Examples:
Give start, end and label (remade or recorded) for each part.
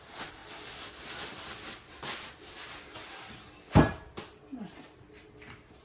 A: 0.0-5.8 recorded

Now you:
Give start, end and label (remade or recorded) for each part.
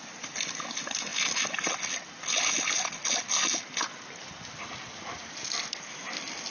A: 0.0-6.5 recorded